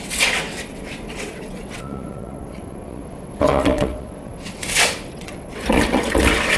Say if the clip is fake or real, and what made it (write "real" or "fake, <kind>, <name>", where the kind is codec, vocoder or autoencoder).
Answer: fake, vocoder, WaveNeXt